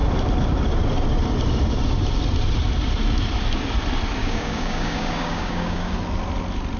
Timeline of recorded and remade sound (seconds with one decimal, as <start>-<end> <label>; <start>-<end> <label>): 0.0-4.2 recorded; 4.2-5.9 remade; 5.9-6.8 recorded